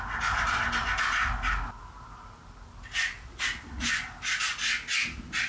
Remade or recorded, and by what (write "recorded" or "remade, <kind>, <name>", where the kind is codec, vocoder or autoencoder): recorded